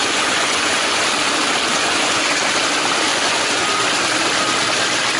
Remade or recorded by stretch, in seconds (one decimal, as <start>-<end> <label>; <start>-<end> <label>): 0.0-1.0 remade; 1.0-1.7 recorded; 1.7-2.3 remade; 2.3-3.1 recorded; 3.1-3.7 remade; 3.7-5.2 recorded